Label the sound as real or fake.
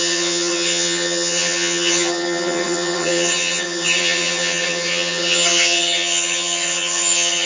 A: fake